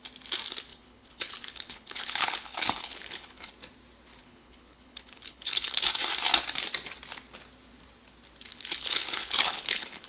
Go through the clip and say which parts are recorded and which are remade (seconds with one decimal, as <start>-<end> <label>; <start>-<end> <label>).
0.0-0.7 recorded; 0.7-3.5 remade; 3.5-4.2 recorded; 4.2-5.8 remade; 5.8-8.5 recorded; 8.5-10.1 remade